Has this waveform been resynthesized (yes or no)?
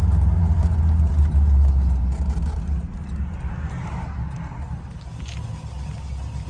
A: no